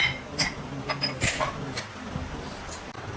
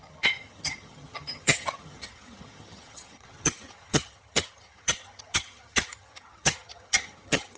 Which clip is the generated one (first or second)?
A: second